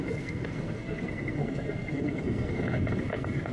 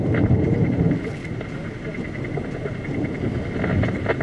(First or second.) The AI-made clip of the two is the first